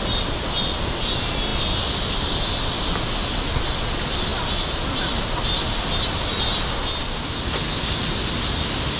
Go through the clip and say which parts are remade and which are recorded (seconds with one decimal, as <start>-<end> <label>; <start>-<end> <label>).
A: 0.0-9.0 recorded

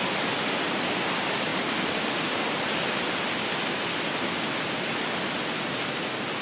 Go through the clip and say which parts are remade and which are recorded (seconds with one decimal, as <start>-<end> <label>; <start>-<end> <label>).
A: 0.0-6.4 recorded

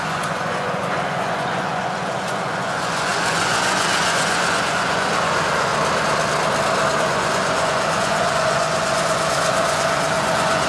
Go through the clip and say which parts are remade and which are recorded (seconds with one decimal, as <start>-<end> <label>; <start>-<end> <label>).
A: 0.0-5.7 remade; 5.7-7.0 recorded; 7.0-10.7 remade

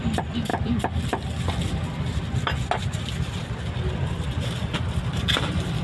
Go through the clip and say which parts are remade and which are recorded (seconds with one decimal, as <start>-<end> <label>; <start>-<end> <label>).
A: 0.0-5.8 recorded

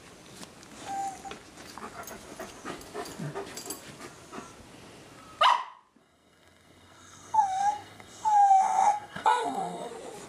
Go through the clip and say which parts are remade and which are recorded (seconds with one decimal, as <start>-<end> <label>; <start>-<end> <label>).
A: 0.0-6.0 recorded; 6.0-9.9 remade; 9.9-10.3 recorded

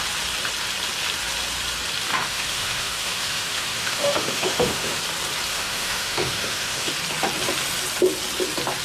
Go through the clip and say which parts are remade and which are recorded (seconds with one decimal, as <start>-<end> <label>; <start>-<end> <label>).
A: 0.0-2.1 recorded; 2.1-5.0 remade; 5.0-5.5 recorded; 5.5-6.9 remade; 6.9-8.8 recorded